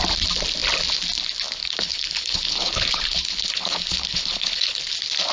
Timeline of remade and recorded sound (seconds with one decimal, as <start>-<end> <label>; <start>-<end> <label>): 0.0-1.6 recorded; 1.6-4.8 remade; 4.8-5.3 recorded

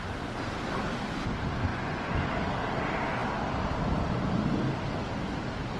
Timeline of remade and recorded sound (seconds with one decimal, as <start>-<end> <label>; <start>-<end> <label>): 0.0-1.7 recorded; 1.7-2.3 remade; 2.3-5.8 recorded

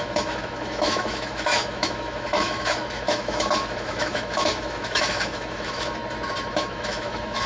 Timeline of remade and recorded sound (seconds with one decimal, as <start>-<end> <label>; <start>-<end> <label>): 0.0-6.0 remade; 6.0-6.5 recorded; 6.5-7.5 remade

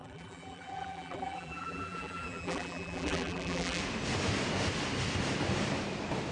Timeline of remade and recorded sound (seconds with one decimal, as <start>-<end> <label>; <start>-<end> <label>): 0.0-3.8 remade; 3.8-6.3 recorded

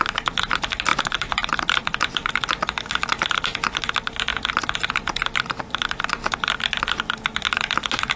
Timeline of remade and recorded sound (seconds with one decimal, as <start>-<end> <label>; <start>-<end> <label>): 0.0-0.9 recorded; 0.9-2.3 remade; 2.3-8.2 recorded

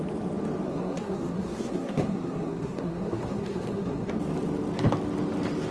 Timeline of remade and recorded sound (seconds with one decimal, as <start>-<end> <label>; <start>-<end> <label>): 0.0-0.7 recorded; 0.7-4.1 remade; 4.1-5.7 recorded